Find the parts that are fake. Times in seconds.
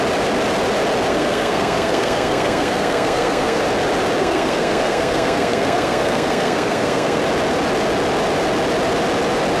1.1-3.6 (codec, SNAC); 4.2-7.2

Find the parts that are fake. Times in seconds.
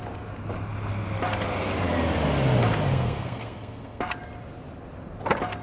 2.9-4.0 (codec, SNAC)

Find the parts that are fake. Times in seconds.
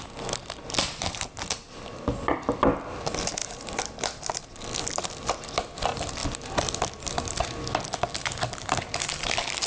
none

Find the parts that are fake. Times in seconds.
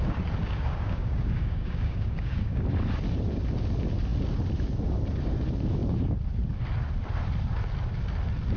0.4-2.6 (codec, DAC)